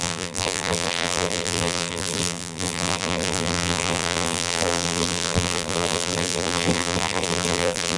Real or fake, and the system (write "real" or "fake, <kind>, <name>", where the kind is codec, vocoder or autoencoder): fake, vocoder, BigVGAN v2